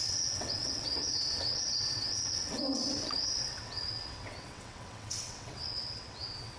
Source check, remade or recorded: remade